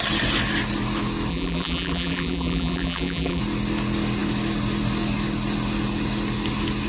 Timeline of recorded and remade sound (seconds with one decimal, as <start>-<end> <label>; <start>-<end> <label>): 0.0-1.3 recorded; 1.3-3.4 remade; 3.4-6.9 recorded